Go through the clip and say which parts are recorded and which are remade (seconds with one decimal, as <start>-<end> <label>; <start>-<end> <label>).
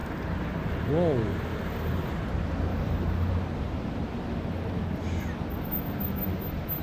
0.0-0.9 remade; 0.9-1.3 recorded; 1.3-2.1 remade; 2.1-2.7 recorded; 2.7-3.3 remade; 3.3-6.8 recorded